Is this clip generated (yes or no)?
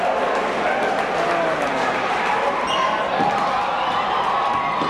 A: no